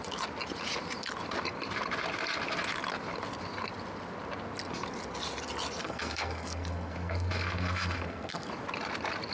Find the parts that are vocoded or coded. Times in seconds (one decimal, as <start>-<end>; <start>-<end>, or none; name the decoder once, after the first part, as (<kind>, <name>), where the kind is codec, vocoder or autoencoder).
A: 5.8-8.5 (codec, SNAC)